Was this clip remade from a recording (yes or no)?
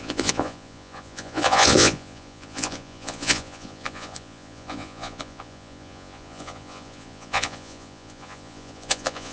yes